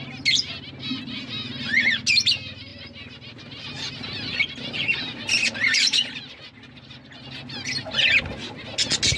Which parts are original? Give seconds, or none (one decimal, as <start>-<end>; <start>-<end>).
0.0-9.2